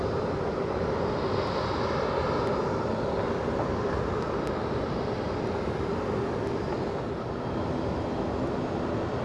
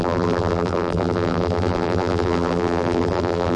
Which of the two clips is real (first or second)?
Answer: first